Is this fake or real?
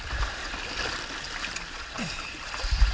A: fake